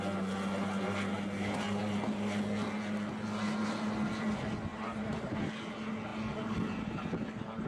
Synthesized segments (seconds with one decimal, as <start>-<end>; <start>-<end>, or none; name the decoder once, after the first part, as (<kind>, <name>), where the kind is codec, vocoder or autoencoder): 4.7-5.4 (vocoder, BigVGAN v2)

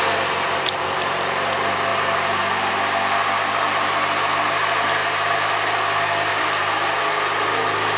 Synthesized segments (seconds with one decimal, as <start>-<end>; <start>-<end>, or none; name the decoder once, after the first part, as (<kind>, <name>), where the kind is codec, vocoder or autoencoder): 1.9-2.7 (vocoder, BigVGAN v2); 5.0-5.5; 6.3-7.0

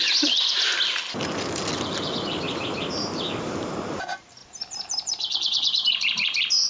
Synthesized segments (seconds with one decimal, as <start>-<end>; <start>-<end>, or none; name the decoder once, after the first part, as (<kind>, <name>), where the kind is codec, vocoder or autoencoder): 0.0-0.7 (vocoder, BigVGAN v2); 3.4-4.4; 5.1-6.7

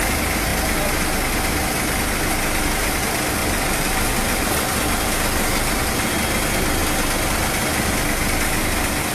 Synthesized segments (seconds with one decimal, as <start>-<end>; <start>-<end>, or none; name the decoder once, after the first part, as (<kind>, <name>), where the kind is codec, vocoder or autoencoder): 3.4-4.4 (vocoder, BigVGAN v2)